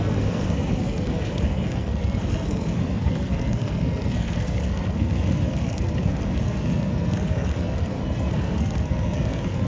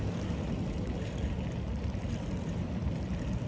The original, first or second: second